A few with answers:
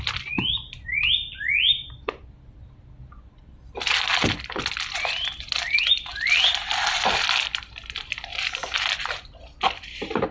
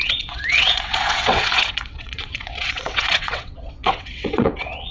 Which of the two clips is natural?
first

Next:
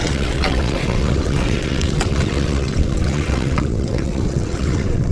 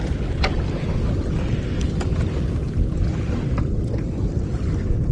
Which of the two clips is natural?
second